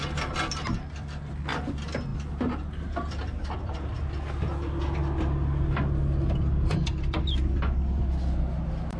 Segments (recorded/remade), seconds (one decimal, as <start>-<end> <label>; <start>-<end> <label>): 0.0-9.0 recorded